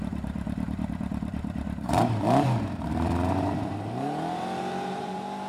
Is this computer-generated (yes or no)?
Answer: yes